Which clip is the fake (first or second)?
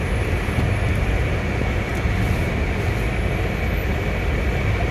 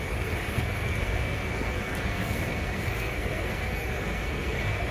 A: second